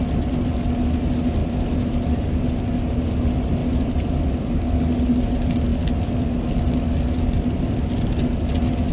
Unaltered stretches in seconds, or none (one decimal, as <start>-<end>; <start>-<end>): 0.0-8.9